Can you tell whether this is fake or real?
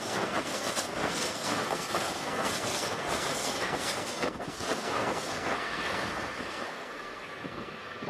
fake